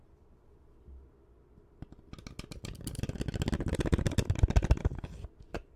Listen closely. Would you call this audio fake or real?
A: real